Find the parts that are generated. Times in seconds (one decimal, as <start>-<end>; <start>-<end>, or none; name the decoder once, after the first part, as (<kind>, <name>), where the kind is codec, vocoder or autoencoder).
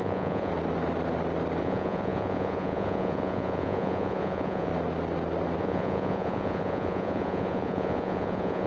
0.0-0.5 (vocoder, Vocos); 1.6-4.7; 5.6-8.7